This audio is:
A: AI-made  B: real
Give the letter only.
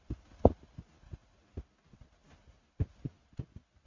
B